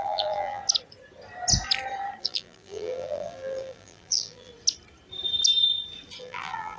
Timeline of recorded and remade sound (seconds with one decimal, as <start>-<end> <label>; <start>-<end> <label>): 0.0-0.6 remade; 0.6-2.2 recorded; 2.2-4.5 remade; 4.5-6.2 recorded; 6.2-6.8 remade